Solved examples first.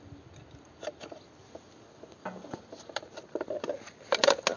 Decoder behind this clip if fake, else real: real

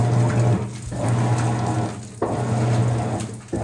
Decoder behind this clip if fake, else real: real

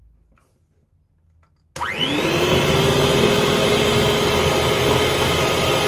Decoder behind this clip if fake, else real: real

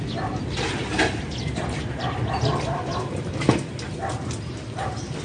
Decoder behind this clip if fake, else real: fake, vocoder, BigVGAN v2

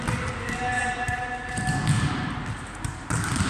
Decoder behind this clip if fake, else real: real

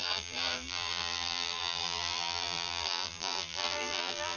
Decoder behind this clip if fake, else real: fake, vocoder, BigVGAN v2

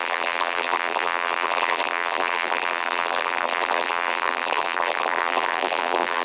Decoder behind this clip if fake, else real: fake, vocoder, BigVGAN v2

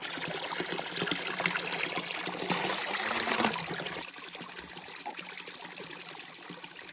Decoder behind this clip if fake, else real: real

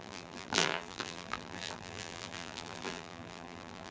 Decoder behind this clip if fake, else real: fake, vocoder, BigVGAN v2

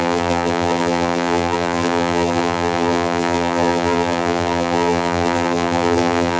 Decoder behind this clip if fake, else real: fake, vocoder, BigVGAN v2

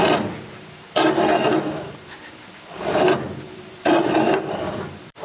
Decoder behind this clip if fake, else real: fake, vocoder, BigVGAN v2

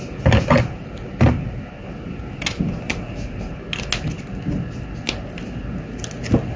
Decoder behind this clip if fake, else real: real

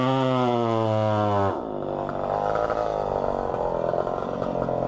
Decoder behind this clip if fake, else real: real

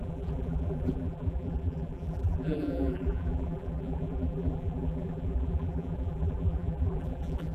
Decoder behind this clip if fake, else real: fake, vocoder, BigVGAN v2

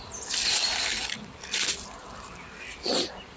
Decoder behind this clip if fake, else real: fake, vocoder, BigVGAN v2